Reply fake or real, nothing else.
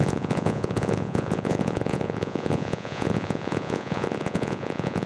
fake